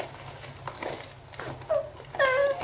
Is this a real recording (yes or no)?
yes